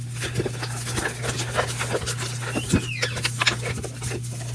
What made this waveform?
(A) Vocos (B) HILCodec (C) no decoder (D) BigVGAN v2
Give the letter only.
C